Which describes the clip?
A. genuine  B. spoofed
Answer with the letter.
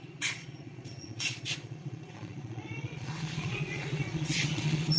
B